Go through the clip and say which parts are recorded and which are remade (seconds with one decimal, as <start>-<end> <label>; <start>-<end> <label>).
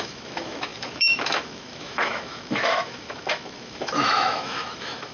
0.0-5.1 remade